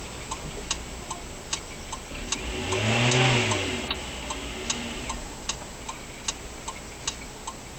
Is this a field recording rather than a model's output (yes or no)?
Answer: yes